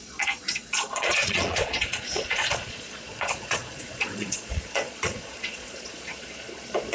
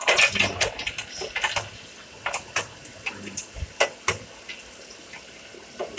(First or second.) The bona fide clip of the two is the second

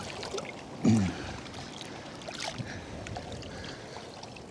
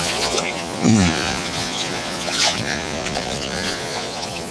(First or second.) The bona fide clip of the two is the first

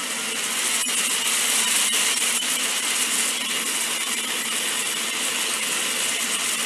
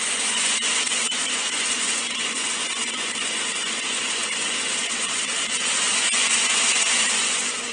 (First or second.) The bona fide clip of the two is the first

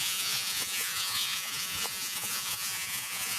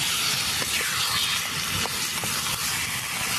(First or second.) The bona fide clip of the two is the second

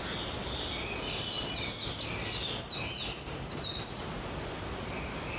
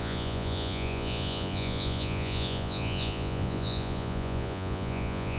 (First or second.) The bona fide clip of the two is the first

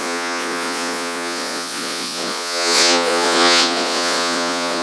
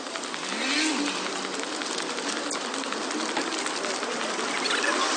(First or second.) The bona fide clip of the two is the second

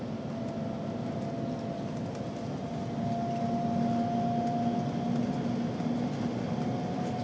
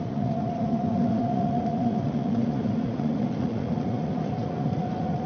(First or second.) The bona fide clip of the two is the first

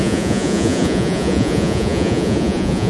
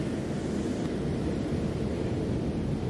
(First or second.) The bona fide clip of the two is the second